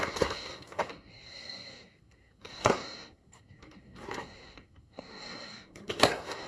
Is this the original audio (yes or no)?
no